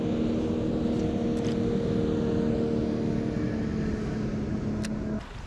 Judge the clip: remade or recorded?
recorded